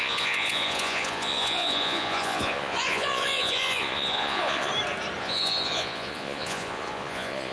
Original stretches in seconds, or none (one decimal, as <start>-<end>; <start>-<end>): 4.7-5.2